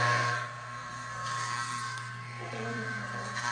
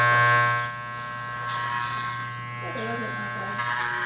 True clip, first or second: second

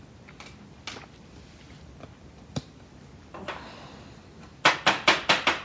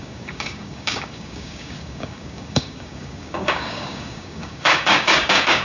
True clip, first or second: first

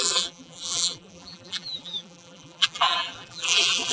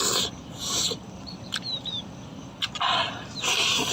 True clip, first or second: second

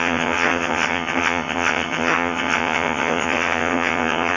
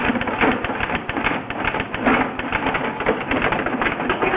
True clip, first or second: second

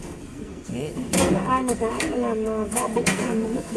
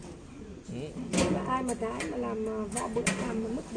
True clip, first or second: second